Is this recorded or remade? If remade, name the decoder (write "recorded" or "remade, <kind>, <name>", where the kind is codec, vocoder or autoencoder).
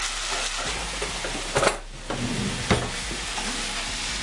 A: recorded